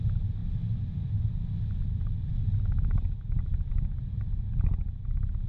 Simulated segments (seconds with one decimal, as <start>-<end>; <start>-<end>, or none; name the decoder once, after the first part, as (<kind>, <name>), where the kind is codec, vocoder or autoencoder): none